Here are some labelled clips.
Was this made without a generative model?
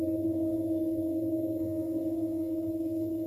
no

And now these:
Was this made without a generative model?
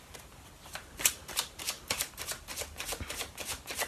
yes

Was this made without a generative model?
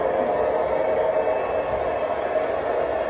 yes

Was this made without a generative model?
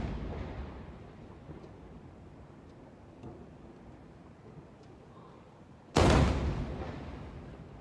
yes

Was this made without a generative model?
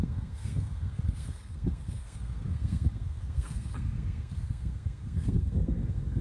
no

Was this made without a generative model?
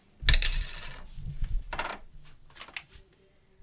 yes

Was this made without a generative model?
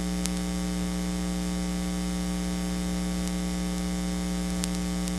yes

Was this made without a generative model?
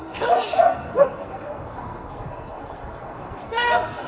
no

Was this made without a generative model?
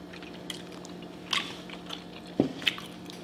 yes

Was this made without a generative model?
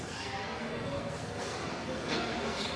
no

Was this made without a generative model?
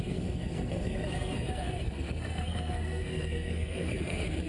no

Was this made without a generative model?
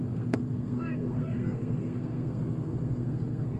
no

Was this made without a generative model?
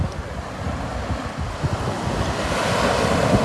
yes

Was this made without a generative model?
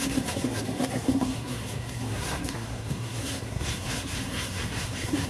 no